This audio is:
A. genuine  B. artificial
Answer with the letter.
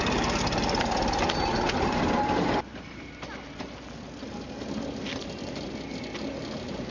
A